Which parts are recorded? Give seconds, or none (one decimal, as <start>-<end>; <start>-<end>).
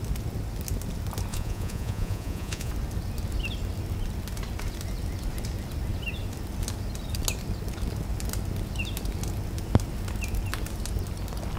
0.0-1.3; 2.7-11.6